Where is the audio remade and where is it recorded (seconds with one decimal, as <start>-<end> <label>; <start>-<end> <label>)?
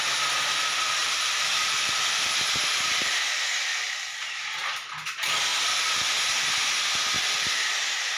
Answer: 0.0-1.0 recorded; 1.0-1.5 remade; 1.5-8.2 recorded